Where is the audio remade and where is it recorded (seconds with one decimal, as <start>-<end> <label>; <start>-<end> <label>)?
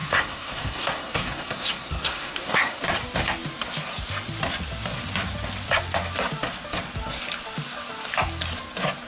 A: 0.0-2.8 remade; 2.8-9.1 recorded